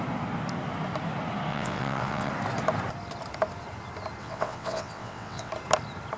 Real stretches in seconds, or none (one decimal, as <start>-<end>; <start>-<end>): 0.0-1.5; 2.3-4.2; 5.5-6.2